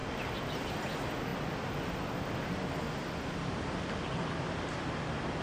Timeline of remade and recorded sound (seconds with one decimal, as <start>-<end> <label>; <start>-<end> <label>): 0.0-5.4 recorded